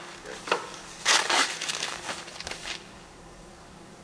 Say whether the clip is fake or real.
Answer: fake